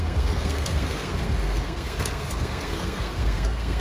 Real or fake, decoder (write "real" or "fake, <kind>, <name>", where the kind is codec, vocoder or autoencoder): fake, codec, SNAC